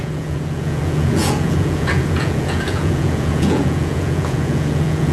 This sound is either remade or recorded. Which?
remade